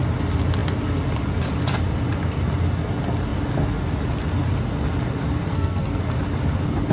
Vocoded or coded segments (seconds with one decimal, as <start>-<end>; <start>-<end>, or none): 5.5-6.0